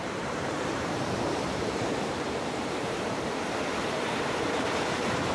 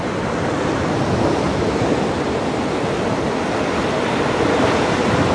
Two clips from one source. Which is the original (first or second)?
second